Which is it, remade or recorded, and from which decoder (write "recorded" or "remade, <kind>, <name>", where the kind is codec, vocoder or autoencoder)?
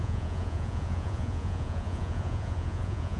remade, vocoder, Vocos